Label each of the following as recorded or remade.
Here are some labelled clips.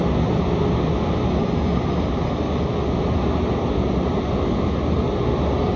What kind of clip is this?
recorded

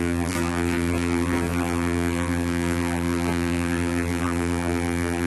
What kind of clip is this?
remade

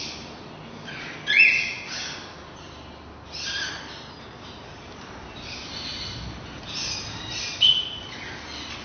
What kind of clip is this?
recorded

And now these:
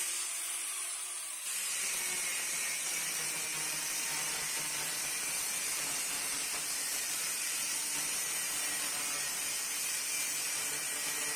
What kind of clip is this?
remade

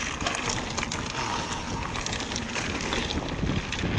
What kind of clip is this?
recorded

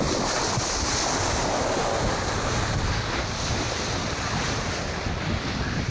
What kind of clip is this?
recorded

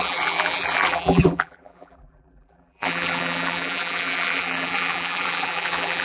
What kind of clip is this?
remade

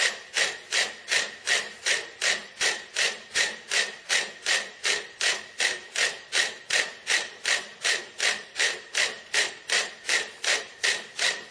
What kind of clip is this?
remade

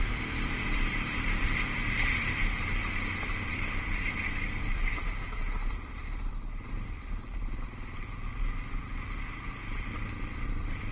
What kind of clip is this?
remade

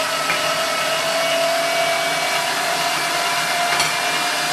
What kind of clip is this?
recorded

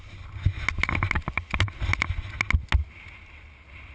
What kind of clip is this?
recorded